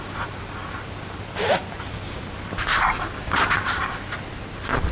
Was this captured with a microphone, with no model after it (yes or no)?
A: yes